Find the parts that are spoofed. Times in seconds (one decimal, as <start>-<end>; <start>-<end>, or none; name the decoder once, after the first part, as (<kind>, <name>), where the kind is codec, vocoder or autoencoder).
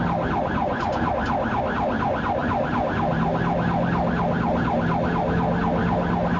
0.6-1.1 (vocoder, Vocos)